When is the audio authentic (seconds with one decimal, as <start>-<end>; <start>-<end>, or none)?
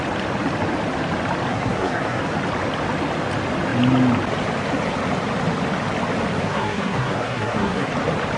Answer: 0.0-1.5; 2.2-6.4; 7.9-8.4